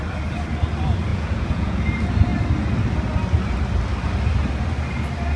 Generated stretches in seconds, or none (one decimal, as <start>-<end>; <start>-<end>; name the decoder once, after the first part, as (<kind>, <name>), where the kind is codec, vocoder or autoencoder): 1.1-1.8 (vocoder, Vocos)